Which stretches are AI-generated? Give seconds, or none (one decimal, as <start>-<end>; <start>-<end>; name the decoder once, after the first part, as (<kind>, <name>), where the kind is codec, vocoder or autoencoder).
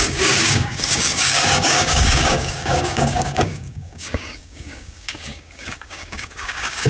0.0-6.9 (codec, DAC)